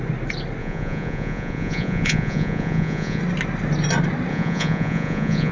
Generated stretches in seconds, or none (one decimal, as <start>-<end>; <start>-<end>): 0.6-3.2; 4.3-5.5